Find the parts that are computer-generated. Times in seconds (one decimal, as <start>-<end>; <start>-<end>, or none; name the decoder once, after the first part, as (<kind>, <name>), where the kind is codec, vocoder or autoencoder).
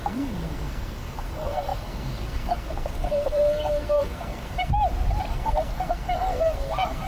0.0-4.7 (codec, SNAC); 5.3-7.1